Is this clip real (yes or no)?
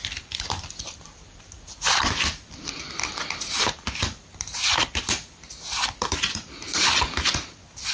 no